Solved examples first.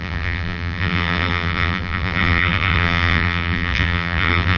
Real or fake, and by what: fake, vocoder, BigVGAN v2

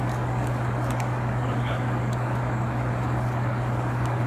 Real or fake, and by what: fake, codec, DAC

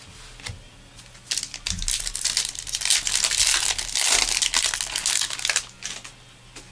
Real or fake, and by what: real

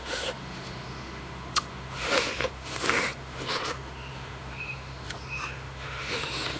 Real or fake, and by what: fake, autoencoder, DAC-VAE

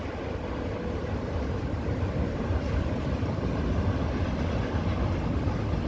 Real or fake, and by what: real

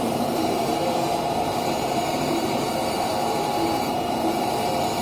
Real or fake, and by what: fake, vocoder, BigVGAN v2